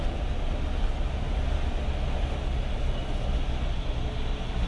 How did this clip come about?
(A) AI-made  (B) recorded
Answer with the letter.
B